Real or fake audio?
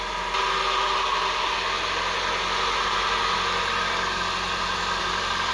real